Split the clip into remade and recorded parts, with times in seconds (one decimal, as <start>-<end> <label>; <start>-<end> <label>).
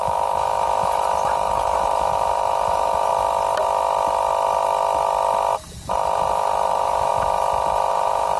0.0-3.1 remade; 3.1-5.9 recorded; 5.9-8.4 remade